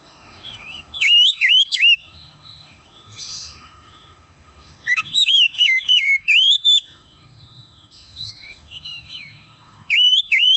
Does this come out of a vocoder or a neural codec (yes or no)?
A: yes